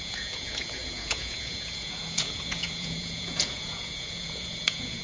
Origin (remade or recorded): remade